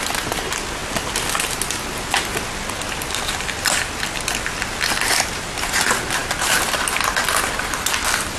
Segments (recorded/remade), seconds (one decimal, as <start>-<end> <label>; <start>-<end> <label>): 0.0-8.4 recorded